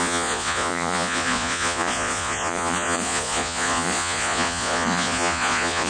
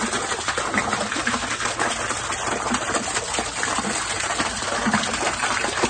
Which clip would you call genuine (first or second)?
second